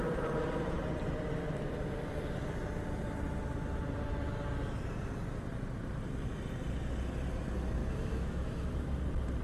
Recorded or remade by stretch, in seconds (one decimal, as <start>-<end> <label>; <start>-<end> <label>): 0.0-7.8 recorded; 7.8-9.0 remade; 9.0-9.4 recorded